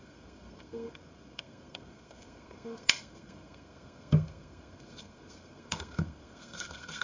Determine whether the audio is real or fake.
fake